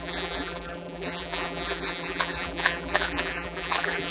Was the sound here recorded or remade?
remade